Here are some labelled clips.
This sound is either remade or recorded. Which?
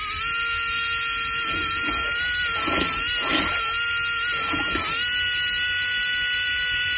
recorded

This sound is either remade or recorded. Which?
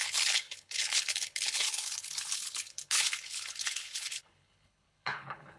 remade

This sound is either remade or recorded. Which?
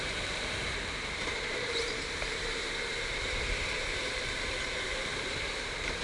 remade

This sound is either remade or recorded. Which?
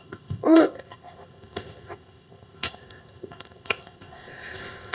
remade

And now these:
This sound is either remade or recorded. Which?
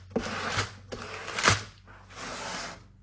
recorded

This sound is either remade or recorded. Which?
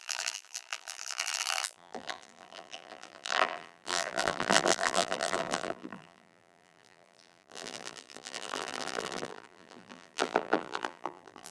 remade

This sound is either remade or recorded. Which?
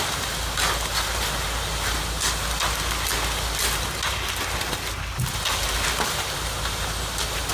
recorded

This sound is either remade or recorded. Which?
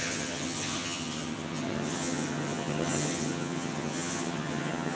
remade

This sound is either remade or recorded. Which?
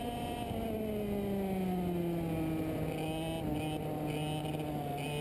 recorded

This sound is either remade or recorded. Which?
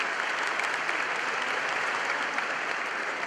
recorded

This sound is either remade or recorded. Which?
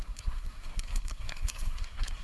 remade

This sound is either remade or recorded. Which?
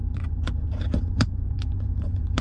remade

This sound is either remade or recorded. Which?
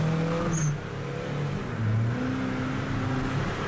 recorded